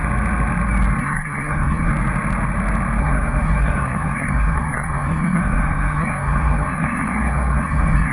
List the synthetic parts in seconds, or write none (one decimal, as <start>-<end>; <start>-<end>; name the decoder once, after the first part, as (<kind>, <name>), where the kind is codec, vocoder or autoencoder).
1.0-1.9 (codec, SNAC); 3.0-8.1